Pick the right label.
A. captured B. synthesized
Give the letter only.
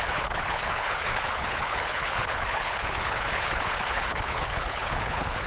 B